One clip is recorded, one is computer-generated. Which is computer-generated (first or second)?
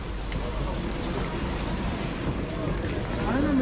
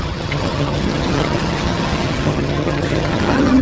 second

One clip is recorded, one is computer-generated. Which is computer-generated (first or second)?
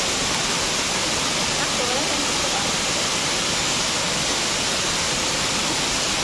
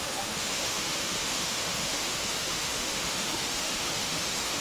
second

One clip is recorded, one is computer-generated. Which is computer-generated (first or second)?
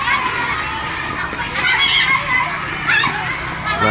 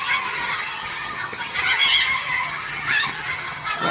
second